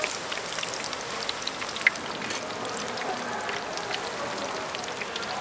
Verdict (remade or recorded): recorded